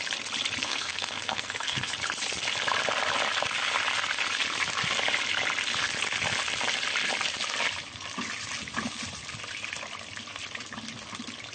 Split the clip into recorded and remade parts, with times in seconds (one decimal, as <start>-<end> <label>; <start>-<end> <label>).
0.0-0.6 recorded; 0.6-1.9 remade; 1.9-11.5 recorded